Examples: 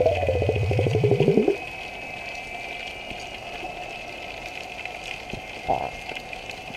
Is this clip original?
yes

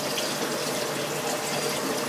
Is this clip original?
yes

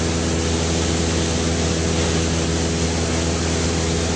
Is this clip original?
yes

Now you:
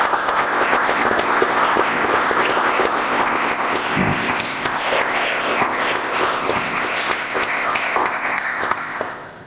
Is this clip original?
no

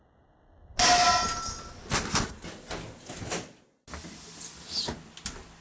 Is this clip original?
yes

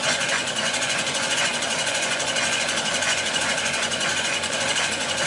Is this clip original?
no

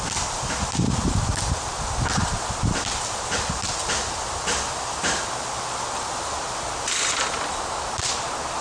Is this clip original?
yes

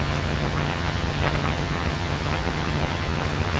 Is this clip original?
no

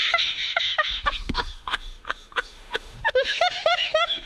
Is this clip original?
no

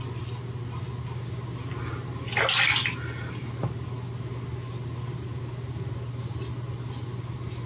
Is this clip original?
yes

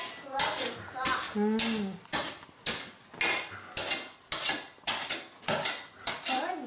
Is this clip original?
yes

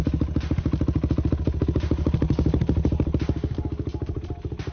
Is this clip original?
yes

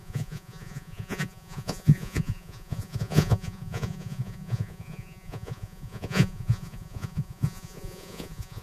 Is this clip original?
no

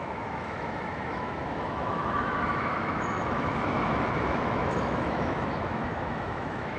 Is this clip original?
no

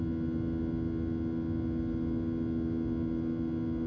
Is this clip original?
yes